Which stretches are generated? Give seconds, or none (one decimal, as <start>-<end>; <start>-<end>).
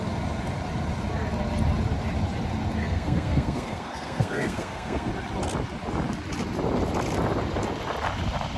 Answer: 2.8-5.1